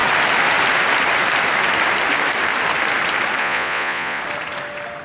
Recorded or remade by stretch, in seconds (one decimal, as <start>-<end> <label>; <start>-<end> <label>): 0.0-3.4 recorded; 3.4-4.2 remade; 4.2-5.0 recorded